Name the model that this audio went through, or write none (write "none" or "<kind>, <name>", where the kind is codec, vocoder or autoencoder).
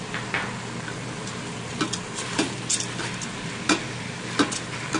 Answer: none